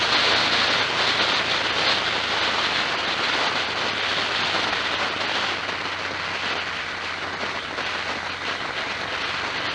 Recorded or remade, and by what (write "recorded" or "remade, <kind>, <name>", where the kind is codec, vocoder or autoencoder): recorded